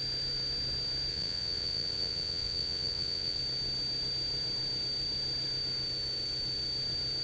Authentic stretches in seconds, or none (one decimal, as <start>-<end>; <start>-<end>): 0.0-1.1; 3.4-7.2